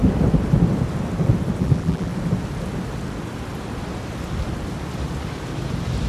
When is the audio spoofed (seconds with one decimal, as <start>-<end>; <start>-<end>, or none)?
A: 1.6-2.1